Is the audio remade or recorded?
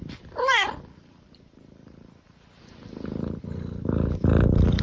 remade